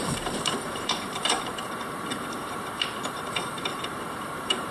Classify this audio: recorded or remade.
remade